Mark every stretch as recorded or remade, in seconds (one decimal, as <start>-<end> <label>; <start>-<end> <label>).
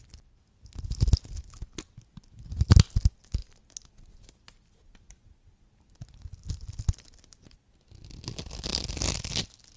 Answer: 0.0-9.8 recorded